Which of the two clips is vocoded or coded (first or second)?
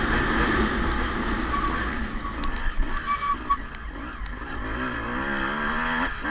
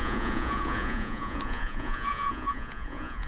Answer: second